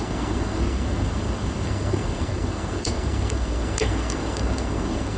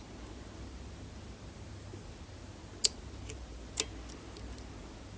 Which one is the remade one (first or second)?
first